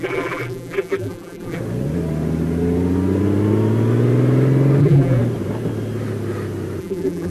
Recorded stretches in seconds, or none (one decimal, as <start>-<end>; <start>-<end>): 1.6-4.8; 5.2-6.8